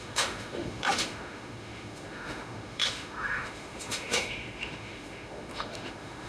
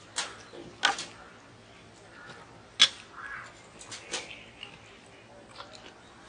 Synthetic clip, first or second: first